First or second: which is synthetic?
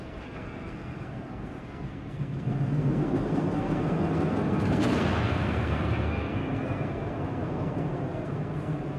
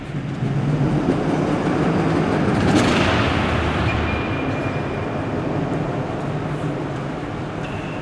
first